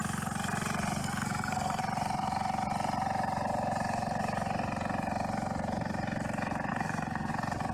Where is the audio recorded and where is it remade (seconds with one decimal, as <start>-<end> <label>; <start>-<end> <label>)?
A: 0.0-1.0 recorded; 1.0-1.8 remade; 1.8-6.7 recorded; 6.7-7.3 remade; 7.3-7.7 recorded